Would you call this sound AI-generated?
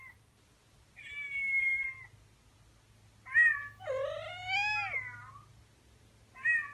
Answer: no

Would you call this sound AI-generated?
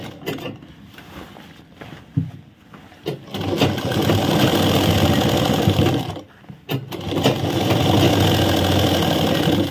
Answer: no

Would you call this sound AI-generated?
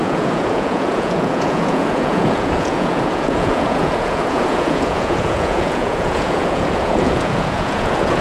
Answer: yes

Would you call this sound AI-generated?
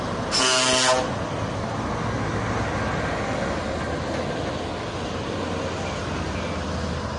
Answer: no